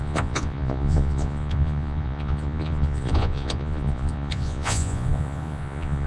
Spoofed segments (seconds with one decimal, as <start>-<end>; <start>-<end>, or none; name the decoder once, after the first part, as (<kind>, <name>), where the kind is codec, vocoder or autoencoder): 0.0-6.1 (vocoder, Vocos)